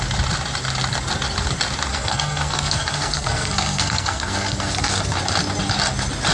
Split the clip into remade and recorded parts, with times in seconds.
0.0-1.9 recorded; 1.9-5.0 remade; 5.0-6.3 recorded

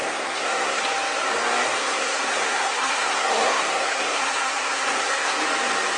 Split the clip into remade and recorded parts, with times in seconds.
0.0-0.8 remade; 0.8-1.8 recorded; 1.8-5.4 remade; 5.4-6.0 recorded

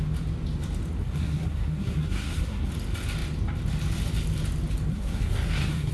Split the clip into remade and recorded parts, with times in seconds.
0.0-1.0 recorded; 1.0-2.7 remade; 2.7-4.9 recorded; 4.9-5.9 remade